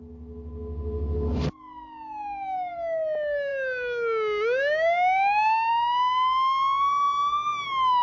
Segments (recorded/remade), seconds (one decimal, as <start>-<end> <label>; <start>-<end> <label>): 0.0-8.0 recorded